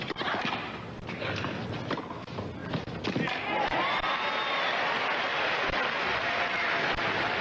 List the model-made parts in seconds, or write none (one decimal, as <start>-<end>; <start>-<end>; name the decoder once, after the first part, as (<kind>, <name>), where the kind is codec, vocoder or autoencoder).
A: none